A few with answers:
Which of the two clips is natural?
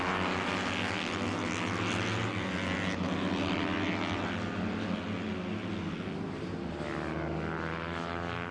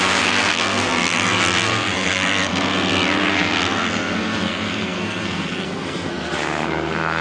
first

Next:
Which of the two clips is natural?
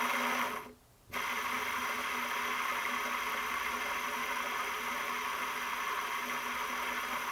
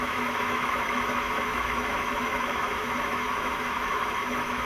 first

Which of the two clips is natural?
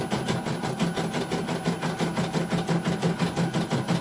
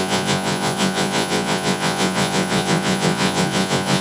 first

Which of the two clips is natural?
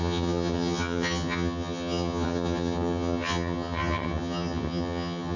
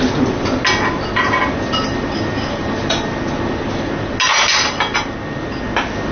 second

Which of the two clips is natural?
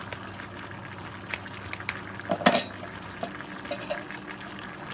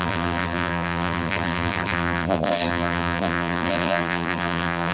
first